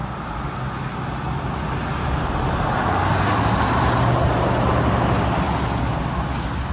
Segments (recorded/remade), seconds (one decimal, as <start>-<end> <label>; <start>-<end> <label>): 0.0-6.7 recorded